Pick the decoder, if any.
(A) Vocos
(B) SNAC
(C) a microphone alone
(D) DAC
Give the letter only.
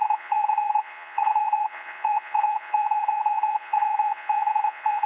A